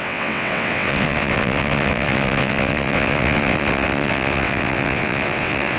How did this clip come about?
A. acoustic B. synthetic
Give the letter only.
B